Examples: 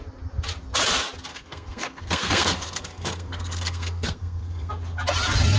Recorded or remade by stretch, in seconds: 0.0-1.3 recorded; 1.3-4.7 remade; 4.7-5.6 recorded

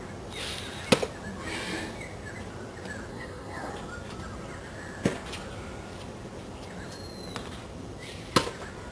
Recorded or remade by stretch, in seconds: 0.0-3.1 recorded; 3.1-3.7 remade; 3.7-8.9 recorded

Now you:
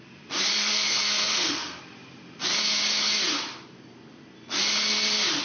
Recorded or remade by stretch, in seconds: 0.0-0.5 recorded; 0.5-1.8 remade; 1.8-5.4 recorded

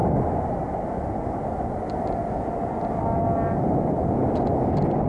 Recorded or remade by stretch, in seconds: 0.0-5.1 recorded

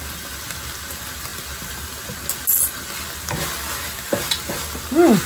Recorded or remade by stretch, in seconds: 0.0-5.3 recorded